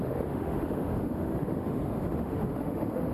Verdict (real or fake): fake